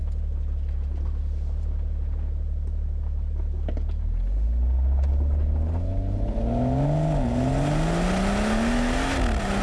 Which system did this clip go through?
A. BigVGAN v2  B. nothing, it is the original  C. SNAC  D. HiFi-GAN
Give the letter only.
B